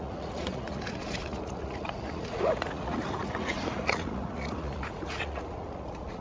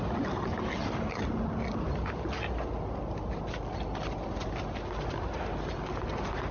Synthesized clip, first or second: first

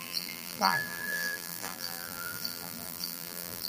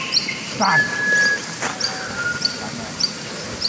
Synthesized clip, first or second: first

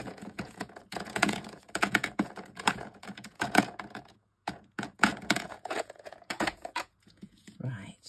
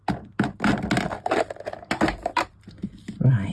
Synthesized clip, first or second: first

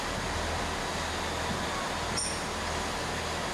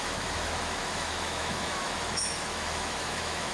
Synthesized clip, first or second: second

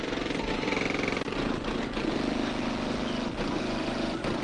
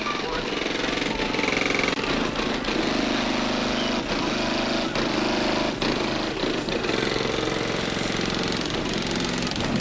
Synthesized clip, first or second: first